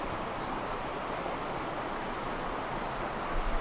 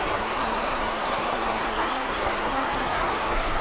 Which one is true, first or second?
first